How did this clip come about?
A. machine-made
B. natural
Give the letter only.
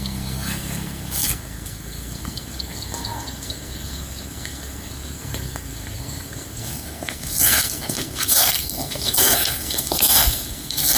A